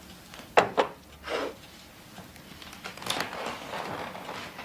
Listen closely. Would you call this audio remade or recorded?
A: recorded